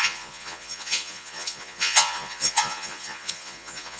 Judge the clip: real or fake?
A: fake